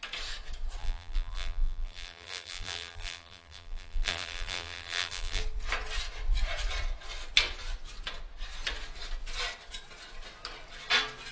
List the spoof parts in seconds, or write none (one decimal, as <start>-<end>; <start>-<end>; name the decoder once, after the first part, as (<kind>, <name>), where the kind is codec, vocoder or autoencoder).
0.8-5.4 (vocoder, BigVGAN v2)